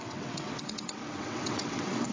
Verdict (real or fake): fake